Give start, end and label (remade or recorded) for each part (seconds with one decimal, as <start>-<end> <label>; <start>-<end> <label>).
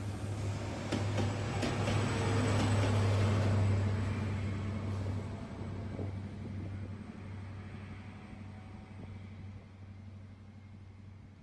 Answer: 0.0-11.4 recorded